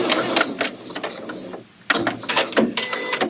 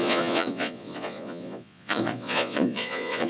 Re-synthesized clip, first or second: second